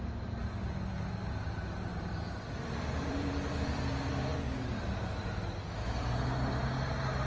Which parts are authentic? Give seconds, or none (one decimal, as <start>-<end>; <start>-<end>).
0.0-1.9; 3.3-7.3